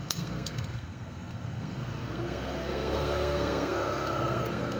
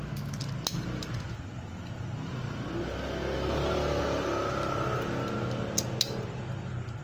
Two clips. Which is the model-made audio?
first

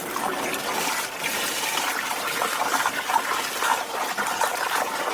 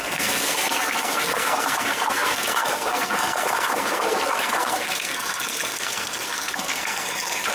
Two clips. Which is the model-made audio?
second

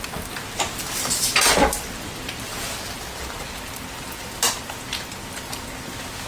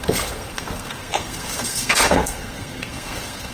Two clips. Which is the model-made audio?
second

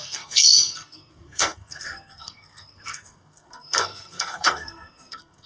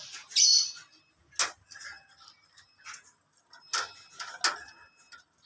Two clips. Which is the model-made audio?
first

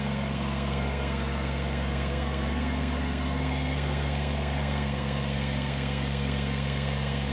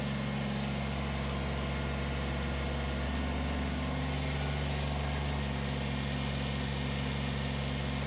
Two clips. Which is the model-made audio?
first